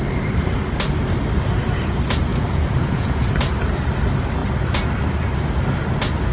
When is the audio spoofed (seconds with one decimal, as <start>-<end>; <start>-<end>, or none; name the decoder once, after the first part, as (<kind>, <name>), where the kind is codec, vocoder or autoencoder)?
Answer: 2.3-3.2 (vocoder, Vocos)